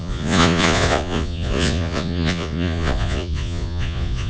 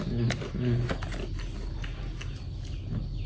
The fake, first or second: first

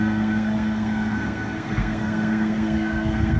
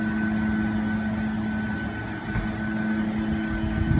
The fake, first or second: first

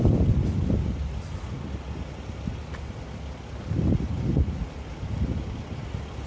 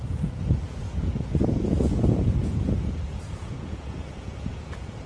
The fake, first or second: second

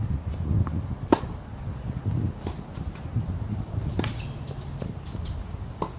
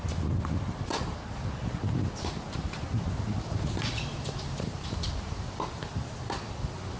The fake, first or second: second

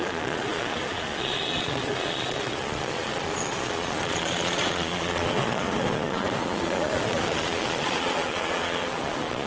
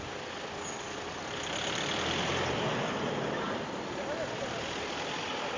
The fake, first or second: first